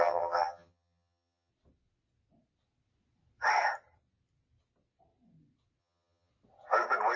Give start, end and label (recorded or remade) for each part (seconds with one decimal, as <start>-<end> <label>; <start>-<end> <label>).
0.0-1.5 remade; 1.5-5.8 recorded; 5.8-6.3 remade; 6.3-7.2 recorded